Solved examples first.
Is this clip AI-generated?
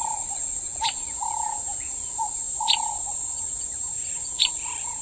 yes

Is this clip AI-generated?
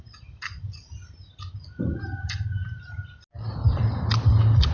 no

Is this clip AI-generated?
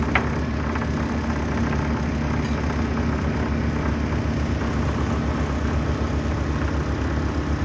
no